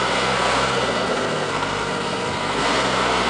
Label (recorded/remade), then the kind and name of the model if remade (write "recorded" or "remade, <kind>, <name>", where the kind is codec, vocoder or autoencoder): remade, codec, SNAC